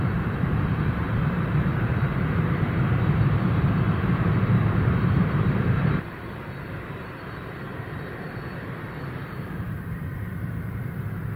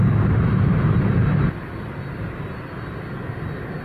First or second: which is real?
second